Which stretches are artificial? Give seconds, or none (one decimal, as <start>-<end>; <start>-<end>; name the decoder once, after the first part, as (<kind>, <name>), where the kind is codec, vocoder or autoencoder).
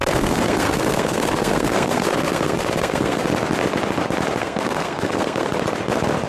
0.0-3.2 (codec, SNAC); 4.4-5.5